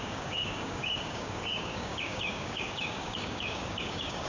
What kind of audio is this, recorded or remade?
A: remade